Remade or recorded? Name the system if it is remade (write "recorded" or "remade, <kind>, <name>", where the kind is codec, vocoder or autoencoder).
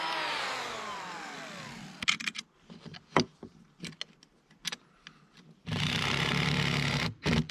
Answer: recorded